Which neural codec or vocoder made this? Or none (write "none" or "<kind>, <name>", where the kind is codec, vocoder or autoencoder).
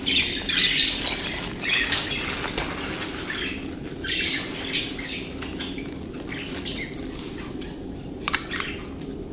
none